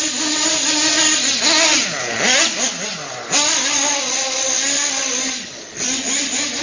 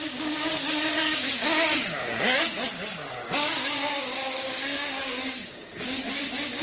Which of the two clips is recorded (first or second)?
first